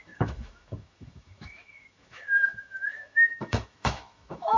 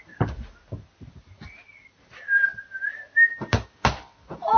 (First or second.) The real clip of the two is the second